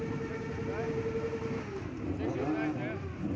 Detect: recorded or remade recorded